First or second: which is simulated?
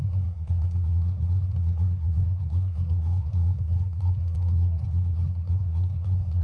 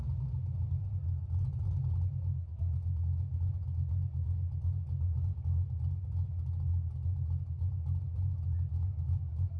first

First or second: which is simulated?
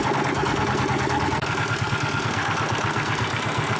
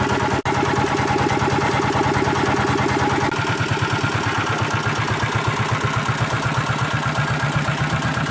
first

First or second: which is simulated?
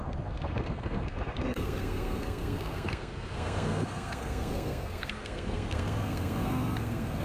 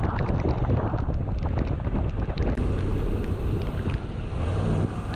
first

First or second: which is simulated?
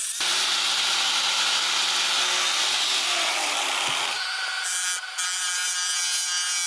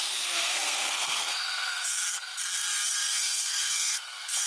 second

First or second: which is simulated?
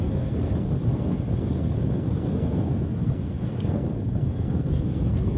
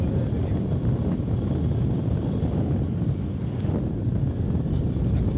first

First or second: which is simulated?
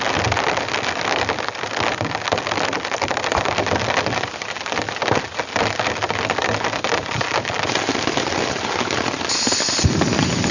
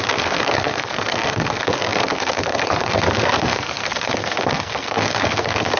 second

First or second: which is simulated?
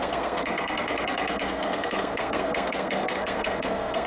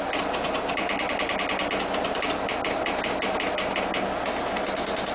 first